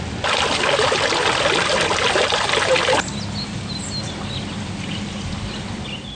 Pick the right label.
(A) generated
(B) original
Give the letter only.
B